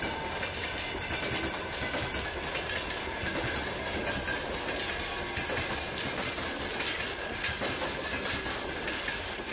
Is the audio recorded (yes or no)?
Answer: yes